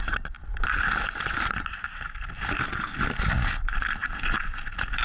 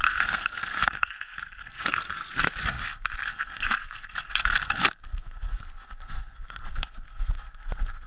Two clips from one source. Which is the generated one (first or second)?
second